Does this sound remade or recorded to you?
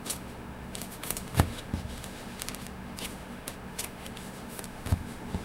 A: remade